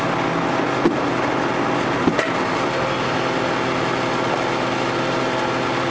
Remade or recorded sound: recorded